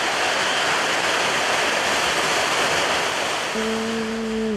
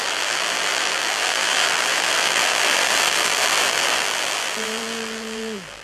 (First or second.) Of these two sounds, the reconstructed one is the second